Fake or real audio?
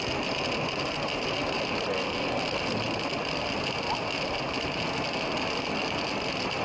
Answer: real